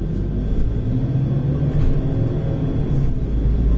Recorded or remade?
recorded